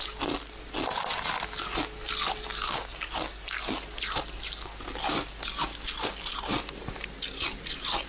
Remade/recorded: recorded